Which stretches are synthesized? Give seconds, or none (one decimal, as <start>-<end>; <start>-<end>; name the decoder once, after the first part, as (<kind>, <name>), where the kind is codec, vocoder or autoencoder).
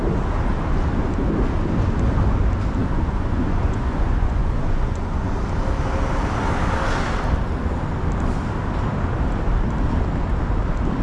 2.8-5.3 (vocoder, Vocos)